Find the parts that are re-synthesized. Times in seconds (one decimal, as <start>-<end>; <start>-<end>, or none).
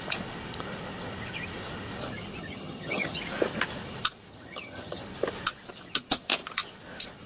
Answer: 2.4-3.2; 4.3-5.0